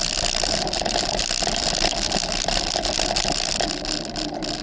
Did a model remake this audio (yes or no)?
no